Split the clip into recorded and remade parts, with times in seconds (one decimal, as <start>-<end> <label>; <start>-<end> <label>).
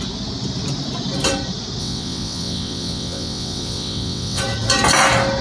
0.0-1.8 recorded; 1.8-4.4 remade; 4.4-5.4 recorded